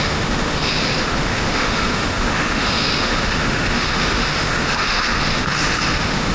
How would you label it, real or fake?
fake